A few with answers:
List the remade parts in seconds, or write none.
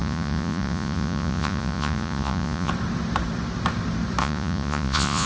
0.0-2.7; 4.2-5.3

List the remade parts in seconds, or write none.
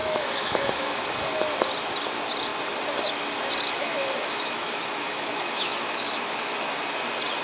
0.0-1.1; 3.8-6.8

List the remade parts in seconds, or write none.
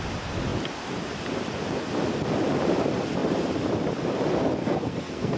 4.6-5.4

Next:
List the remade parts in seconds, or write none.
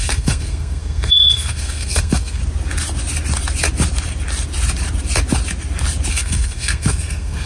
0.0-2.4; 6.1-7.5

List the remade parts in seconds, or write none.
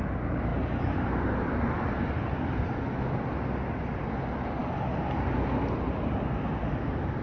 none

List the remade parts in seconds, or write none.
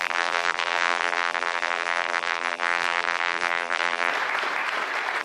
0.0-4.1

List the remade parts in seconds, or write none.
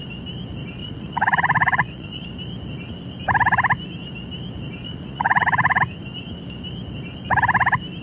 0.8-2.2; 4.9-5.8